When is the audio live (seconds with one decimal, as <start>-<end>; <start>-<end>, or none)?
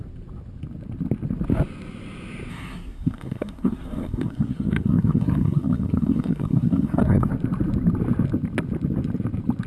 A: 0.0-2.5; 7.3-9.7